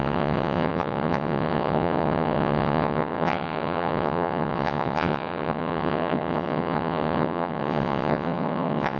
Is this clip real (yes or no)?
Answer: no